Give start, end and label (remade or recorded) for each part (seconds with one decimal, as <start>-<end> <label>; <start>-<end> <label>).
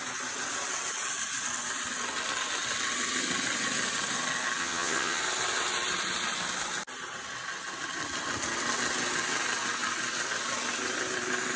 0.0-4.6 recorded; 4.6-5.2 remade; 5.2-11.6 recorded